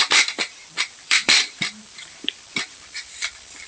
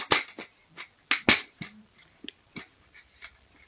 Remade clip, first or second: first